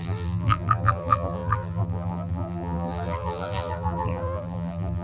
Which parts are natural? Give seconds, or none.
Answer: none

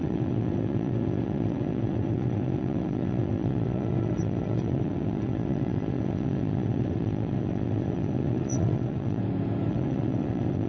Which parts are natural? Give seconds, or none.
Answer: 9.2-9.7

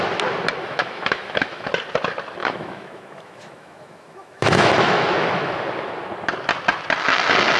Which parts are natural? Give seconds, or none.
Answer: 0.0-0.6; 1.7-2.4; 5.6-7.6